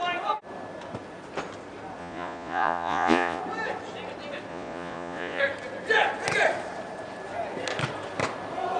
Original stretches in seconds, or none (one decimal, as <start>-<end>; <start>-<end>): 0.0-2.0; 3.4-4.5; 5.4-8.8